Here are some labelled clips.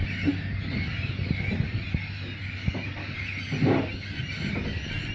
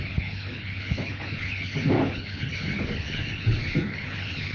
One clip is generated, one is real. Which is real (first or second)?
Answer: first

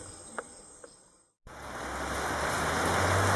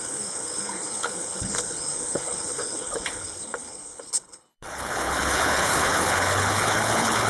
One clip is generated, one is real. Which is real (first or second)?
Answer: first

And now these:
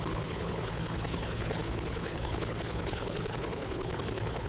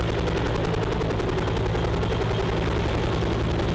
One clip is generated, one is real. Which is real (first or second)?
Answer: second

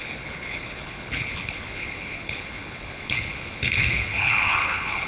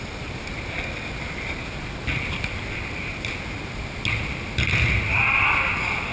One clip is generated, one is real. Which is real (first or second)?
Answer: second